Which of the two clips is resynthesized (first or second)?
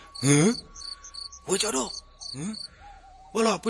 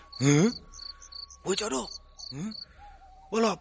first